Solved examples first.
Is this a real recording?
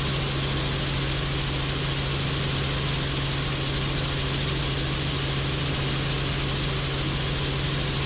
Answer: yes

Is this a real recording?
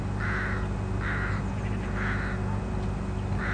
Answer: yes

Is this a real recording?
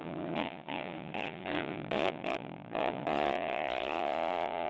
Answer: no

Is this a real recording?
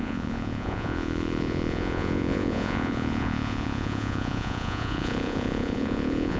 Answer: no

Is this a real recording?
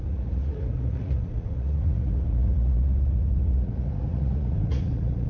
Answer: no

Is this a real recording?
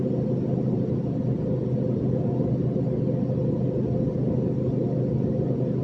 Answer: yes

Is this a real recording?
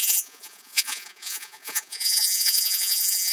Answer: no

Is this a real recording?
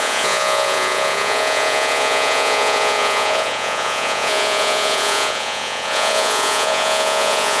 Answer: no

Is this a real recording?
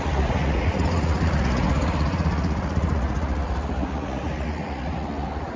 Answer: no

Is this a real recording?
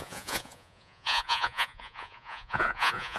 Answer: no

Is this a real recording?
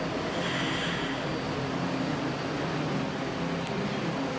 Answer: yes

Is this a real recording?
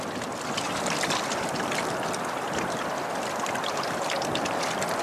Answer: yes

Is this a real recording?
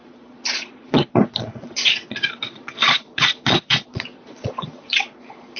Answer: no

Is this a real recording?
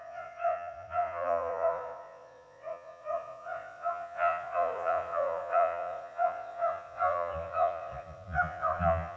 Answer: no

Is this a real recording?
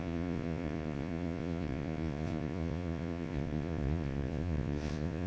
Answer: no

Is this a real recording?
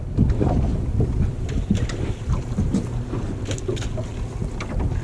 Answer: yes